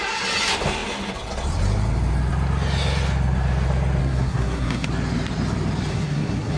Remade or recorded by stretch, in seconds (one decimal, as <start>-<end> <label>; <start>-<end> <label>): 0.0-4.0 recorded; 4.0-4.9 remade; 4.9-5.9 recorded; 5.9-6.6 remade